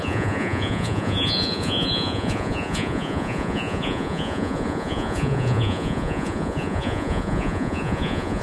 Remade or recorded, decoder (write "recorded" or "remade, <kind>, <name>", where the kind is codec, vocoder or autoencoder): remade, vocoder, Vocos